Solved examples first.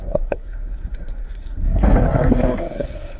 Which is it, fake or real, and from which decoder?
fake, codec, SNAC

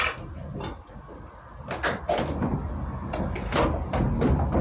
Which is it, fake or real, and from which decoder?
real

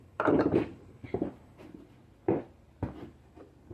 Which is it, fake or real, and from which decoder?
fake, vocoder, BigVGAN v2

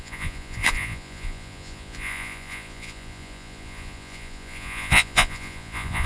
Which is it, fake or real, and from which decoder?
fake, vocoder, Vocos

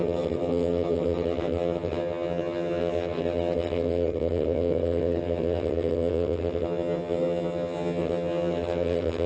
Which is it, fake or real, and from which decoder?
fake, vocoder, HiFi-GAN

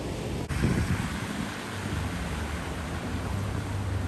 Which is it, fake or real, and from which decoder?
real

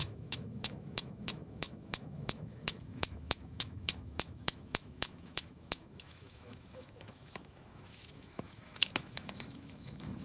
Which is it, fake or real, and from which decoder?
fake, autoencoder, DAC-VAE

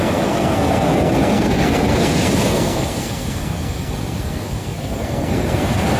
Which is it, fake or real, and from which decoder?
fake, codec, SNAC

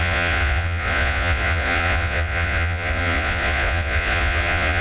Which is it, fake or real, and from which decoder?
fake, vocoder, Vocos